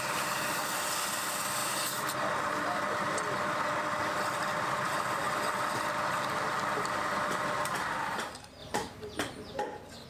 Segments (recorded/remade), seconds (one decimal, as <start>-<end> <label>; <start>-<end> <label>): 0.0-8.6 recorded; 8.6-9.6 remade; 9.6-10.1 recorded